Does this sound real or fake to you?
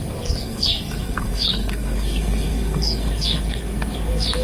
fake